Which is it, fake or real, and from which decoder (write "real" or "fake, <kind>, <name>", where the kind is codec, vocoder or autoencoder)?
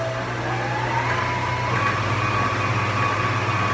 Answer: real